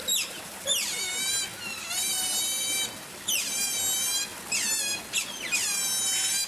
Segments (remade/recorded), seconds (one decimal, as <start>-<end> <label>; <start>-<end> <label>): 0.0-1.0 remade; 1.0-6.5 recorded